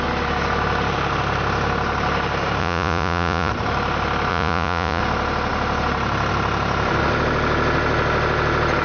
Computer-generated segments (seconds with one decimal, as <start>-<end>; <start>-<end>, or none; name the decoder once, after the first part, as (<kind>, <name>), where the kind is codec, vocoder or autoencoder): 2.6-3.5 (vocoder, Vocos); 4.3-5.0